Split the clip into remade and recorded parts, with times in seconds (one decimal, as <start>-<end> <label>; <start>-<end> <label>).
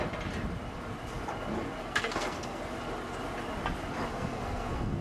0.0-1.8 recorded; 1.8-2.6 remade; 2.6-4.1 recorded; 4.1-5.0 remade